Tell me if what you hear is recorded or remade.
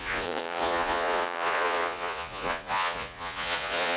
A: remade